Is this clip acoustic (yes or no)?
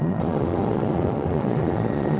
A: no